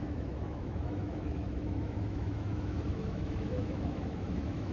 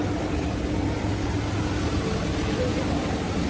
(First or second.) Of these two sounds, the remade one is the first